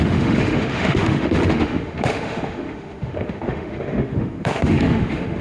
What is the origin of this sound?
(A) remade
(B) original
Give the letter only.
A